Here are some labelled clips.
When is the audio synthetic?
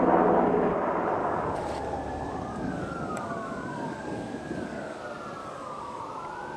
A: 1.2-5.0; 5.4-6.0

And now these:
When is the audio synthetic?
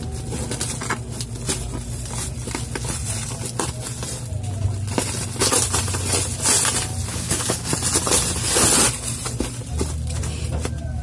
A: 7.1-7.7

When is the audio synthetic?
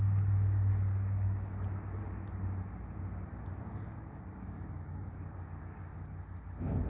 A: 0.0-2.0; 3.6-5.9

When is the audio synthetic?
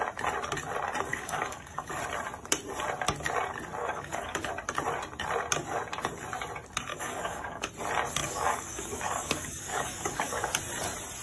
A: 1.1-1.9; 3.8-4.5; 6.9-7.7; 8.2-10.5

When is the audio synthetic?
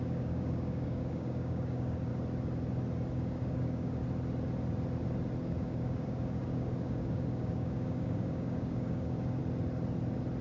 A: 0.0-2.1; 3.1-4.0; 5.4-9.4